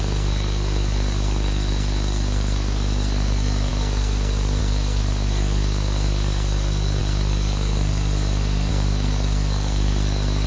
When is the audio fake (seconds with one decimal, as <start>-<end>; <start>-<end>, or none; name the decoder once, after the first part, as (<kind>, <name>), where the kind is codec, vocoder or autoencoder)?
0.0-10.5 (codec, SNAC)